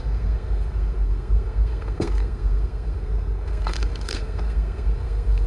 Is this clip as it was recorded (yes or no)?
no